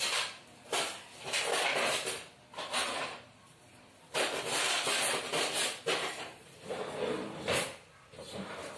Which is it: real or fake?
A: fake